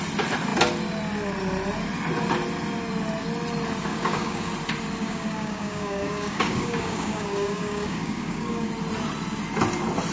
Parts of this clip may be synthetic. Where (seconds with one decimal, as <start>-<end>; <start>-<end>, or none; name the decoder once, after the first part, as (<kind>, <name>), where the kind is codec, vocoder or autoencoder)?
3.9-4.5 (codec, DAC); 5.0-8.7